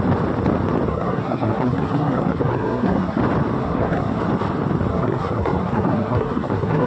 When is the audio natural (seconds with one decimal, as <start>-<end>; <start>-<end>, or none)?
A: 0.0-0.9; 3.2-3.6; 4.2-4.9